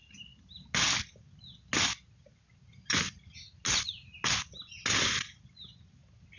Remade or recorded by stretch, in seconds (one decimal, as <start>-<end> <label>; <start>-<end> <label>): 0.0-6.4 recorded